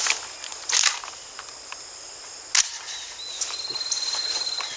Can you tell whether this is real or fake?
real